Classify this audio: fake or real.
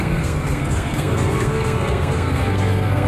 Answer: fake